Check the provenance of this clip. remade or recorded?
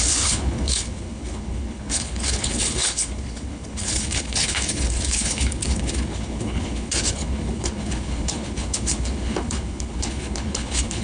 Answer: remade